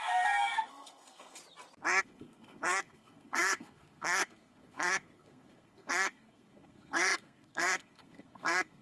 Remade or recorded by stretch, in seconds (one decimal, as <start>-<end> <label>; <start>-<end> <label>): 0.0-1.4 remade; 1.4-2.0 recorded; 2.0-8.8 remade